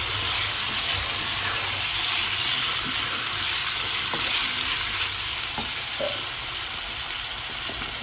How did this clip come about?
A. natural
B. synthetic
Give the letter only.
A